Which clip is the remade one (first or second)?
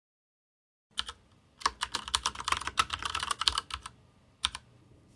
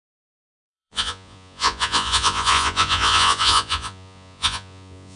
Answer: second